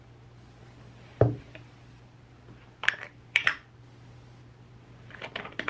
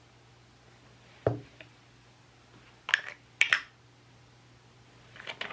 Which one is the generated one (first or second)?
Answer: first